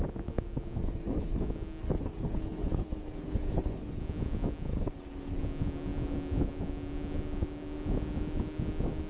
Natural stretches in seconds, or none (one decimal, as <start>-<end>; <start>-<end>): 0.0-0.8; 1.4-1.8; 4.0-4.7; 5.4-9.1